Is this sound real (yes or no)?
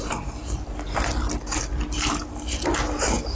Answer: yes